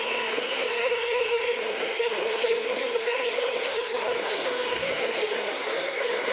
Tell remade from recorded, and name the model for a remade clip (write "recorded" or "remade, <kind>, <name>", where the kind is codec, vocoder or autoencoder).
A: remade, codec, SNAC